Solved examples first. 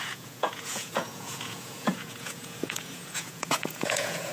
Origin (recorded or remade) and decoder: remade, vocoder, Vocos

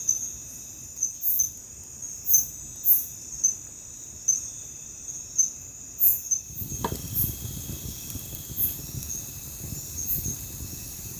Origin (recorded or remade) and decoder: recorded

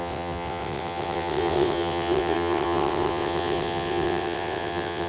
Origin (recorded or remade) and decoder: remade, vocoder, WaveNeXt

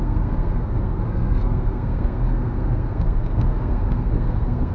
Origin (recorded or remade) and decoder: remade, codec, SNAC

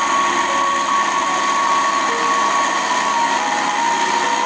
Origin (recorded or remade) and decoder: recorded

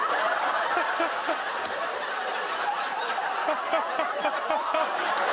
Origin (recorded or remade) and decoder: recorded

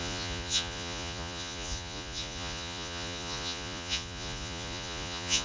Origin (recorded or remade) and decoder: remade, vocoder, Vocos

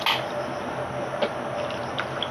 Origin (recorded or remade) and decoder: recorded